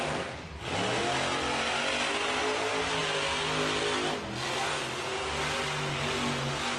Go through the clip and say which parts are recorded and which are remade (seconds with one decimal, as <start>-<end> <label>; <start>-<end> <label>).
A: 0.0-6.8 recorded